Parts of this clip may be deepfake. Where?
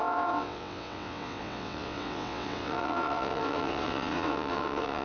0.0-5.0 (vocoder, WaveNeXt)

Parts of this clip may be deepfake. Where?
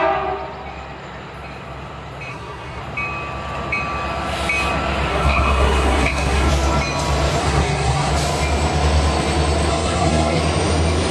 2.3-2.8 (codec, SNAC); 5.1-6.5; 7.4-8.1; 9.7-10.4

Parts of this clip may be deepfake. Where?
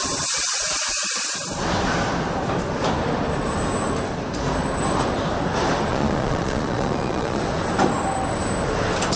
5.9-7.4 (vocoder, Vocos)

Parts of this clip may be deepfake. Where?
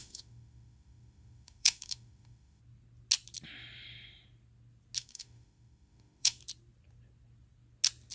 0.0-2.6 (autoencoder, DAC-VAE); 5.0-6.4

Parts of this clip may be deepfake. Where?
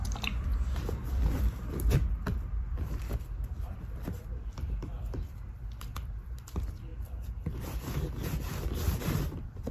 0.0-6.9 (vocoder, BigVGAN v2); 9.0-9.7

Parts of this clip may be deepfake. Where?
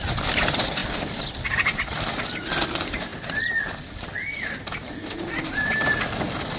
none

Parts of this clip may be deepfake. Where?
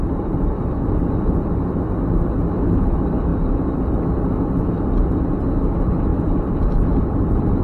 6.1-7.0 (vocoder, BigVGAN v2)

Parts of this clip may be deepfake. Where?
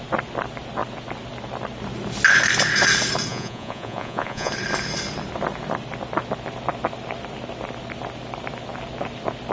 3.3-4.5 (vocoder, Vocos)